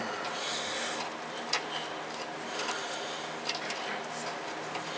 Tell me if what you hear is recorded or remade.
recorded